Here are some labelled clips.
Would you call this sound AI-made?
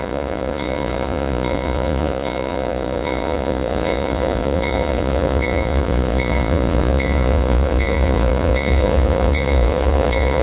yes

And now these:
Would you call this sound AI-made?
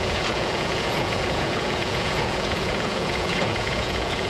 yes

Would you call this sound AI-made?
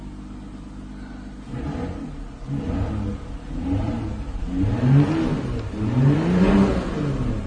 no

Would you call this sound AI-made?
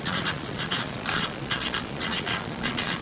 yes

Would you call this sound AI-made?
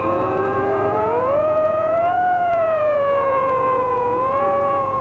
yes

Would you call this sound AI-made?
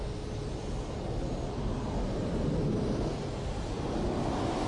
no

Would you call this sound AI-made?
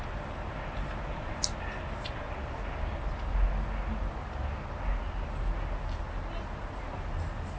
no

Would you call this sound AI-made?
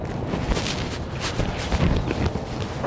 no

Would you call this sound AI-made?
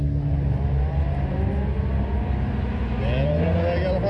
no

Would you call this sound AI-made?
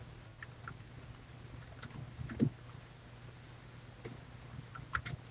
no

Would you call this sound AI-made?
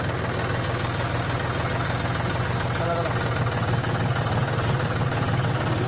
no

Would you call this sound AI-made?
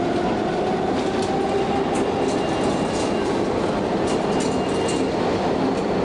no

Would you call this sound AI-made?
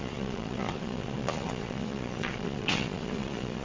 yes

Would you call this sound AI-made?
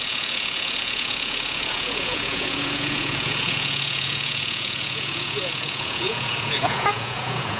yes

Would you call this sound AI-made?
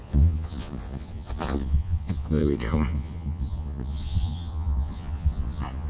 yes